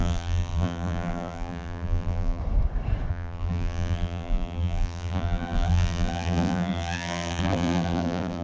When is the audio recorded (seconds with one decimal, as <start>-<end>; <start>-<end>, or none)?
2.4-3.1